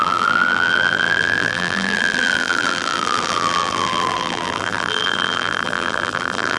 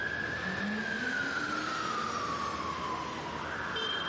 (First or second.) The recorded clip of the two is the second